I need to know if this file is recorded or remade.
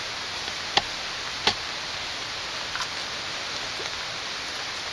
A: recorded